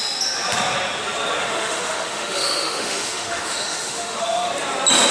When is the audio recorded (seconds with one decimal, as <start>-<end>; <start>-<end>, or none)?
0.0-1.4; 4.5-5.1